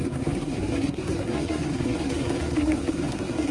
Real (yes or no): no